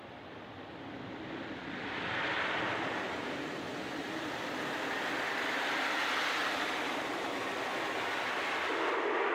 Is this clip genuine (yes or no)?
yes